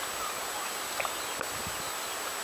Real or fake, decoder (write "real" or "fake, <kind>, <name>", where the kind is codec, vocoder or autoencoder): real